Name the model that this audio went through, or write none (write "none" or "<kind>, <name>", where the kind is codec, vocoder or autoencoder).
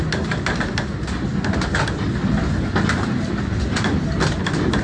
none